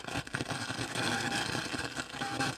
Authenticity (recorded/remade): remade